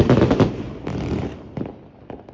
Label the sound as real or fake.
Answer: real